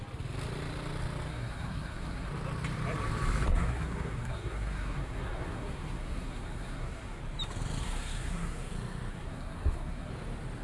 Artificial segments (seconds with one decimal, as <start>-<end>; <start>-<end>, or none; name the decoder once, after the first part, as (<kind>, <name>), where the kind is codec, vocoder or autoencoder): 1.3-2.3 (codec, SNAC); 3.5-7.2; 7.8-8.7; 9.1-10.1